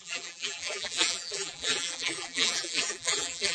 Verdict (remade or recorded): remade